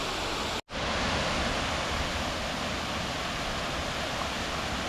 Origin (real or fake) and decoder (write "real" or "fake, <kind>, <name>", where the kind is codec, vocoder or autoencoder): real